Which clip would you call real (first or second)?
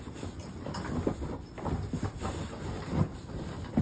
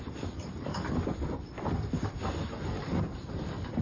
first